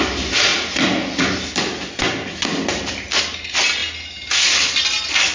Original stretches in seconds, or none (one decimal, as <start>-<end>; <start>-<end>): 0.0-5.3